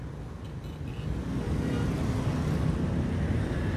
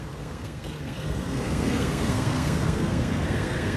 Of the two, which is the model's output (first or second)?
second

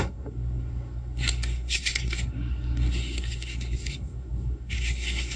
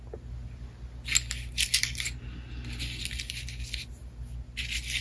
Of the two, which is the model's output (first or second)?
first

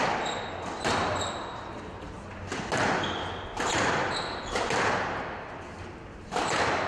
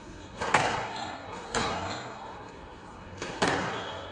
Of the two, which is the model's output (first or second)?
second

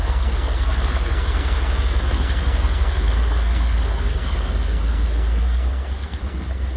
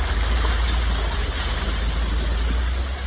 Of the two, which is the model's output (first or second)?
first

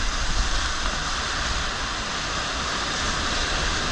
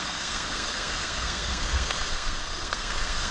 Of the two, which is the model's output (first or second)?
second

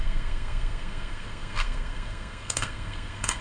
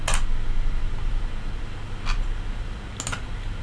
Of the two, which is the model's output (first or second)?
first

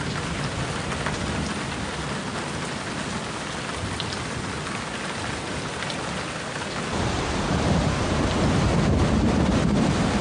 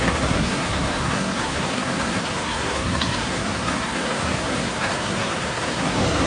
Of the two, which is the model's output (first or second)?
second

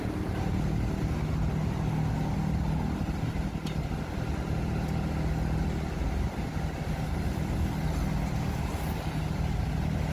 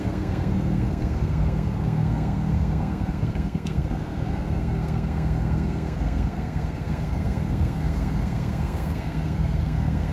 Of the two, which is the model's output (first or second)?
second